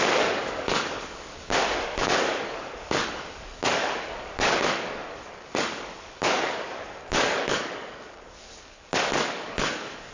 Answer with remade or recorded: remade